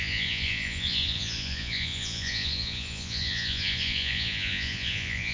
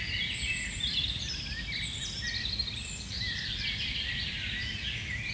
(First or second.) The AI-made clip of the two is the first